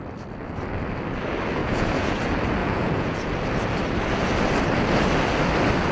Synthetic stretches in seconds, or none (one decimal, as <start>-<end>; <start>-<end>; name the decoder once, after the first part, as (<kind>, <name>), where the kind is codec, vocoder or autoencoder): 1.6-2.2 (vocoder, Vocos); 2.6-3.3

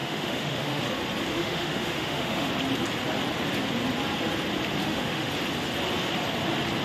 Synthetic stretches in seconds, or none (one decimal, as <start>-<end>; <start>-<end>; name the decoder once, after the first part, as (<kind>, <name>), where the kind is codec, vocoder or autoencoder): 0.0-0.8 (autoencoder, DAC-VAE); 1.3-2.5; 4.8-5.3